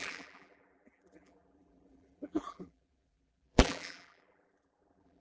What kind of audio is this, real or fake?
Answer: fake